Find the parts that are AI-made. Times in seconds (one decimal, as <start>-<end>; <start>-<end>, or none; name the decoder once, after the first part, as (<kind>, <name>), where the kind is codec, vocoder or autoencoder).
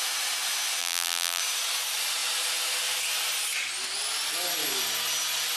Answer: 0.8-1.4 (vocoder, BigVGAN v2)